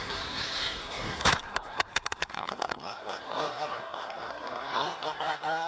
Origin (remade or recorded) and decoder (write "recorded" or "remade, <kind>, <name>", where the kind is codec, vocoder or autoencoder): remade, codec, SNAC